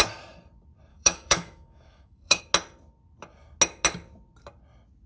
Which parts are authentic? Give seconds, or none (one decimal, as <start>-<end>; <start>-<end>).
0.0-0.9; 2.4-5.1